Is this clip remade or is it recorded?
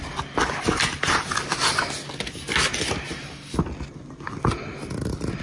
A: recorded